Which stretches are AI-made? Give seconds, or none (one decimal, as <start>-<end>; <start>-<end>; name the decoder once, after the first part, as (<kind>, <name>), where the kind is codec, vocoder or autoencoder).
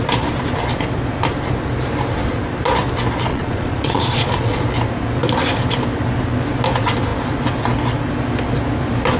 3.3-4.6 (vocoder, Vocos)